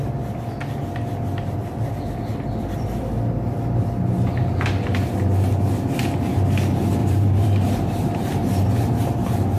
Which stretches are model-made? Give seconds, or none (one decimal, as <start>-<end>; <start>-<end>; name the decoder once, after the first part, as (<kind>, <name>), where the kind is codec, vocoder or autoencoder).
7.0-8.7 (vocoder, BigVGAN v2)

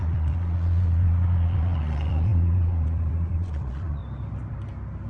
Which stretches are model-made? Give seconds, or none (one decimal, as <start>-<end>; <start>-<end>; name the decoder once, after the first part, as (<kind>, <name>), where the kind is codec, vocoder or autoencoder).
0.0-4.0 (vocoder, Vocos)

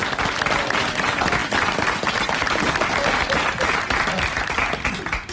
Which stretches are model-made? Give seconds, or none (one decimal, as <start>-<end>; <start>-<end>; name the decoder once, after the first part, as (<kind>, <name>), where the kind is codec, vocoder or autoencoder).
none

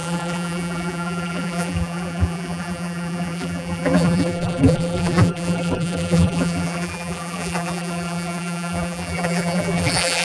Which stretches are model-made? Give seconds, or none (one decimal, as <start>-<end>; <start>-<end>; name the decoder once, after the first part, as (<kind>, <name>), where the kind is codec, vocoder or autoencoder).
0.0-10.2 (vocoder, BigVGAN v2)

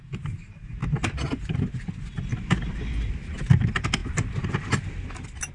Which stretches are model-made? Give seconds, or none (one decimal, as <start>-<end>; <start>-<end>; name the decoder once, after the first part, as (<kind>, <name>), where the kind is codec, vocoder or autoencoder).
0.8-1.9 (vocoder, BigVGAN v2); 2.3-3.1

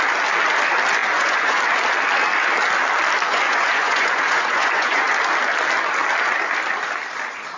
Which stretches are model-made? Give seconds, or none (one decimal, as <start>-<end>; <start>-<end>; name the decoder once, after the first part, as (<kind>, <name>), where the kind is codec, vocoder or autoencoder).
1.0-1.6 (vocoder, Vocos); 3.3-5.2

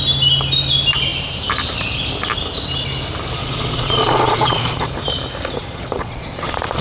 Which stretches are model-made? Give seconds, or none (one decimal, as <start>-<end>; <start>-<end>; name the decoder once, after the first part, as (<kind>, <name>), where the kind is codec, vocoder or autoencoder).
3.4-4.9 (vocoder, Vocos); 5.6-6.8